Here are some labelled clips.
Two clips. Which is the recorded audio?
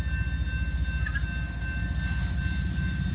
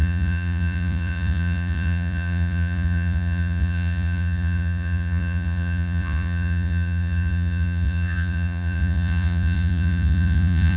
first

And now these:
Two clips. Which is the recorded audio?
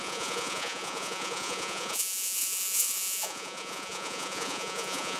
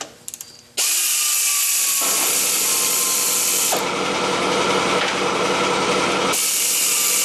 second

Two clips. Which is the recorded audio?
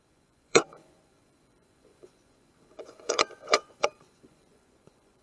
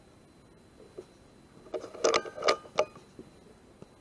second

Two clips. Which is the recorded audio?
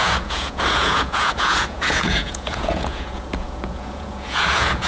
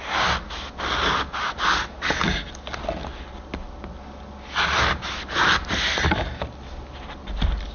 second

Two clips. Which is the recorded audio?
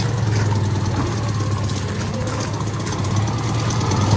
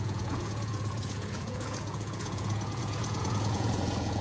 first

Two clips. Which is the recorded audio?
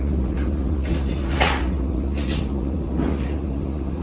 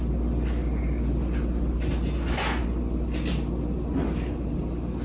second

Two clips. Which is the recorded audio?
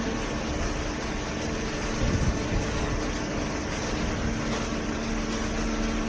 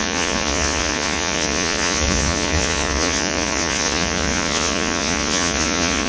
first